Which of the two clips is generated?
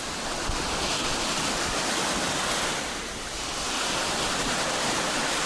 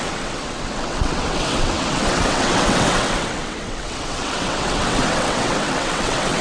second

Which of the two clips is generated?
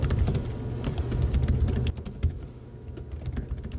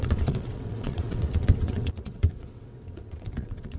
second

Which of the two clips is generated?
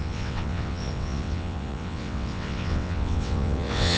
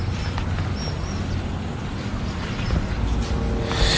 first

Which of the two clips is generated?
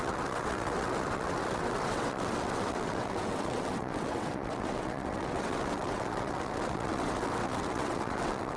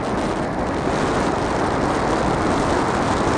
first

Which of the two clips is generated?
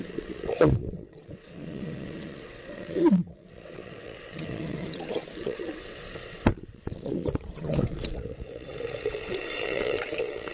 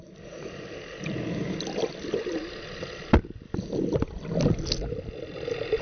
first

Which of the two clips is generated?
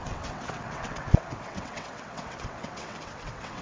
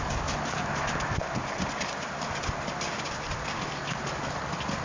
first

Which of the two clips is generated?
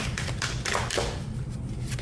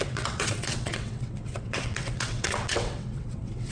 second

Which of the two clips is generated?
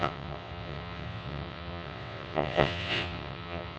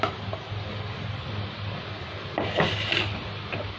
first